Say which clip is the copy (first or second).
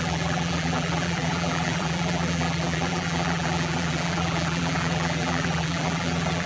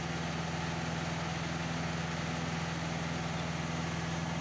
first